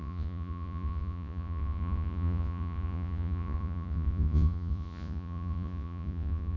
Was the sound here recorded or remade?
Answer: remade